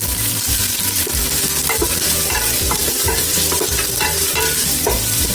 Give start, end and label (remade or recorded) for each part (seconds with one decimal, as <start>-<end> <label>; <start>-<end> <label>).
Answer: 0.0-5.3 remade

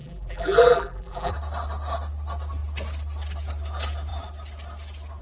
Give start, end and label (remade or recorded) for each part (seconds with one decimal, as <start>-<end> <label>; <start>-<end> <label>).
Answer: 0.0-1.3 remade; 1.3-5.2 recorded